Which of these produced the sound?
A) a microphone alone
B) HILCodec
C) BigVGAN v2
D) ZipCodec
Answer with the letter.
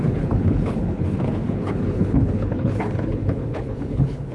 B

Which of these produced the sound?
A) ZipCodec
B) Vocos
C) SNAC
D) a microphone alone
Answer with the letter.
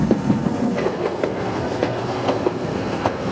C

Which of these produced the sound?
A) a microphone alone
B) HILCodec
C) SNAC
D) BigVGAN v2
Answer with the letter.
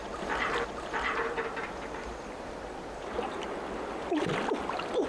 D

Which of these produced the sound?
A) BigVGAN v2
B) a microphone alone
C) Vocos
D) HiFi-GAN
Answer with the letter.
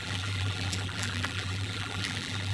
A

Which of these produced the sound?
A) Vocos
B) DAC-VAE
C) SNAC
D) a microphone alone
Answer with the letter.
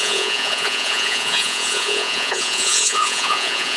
A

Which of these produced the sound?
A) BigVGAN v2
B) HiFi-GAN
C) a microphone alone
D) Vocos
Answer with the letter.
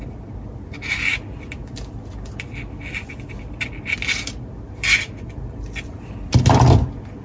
C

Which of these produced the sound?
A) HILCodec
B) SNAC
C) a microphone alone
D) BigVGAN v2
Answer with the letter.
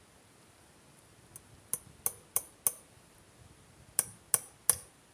C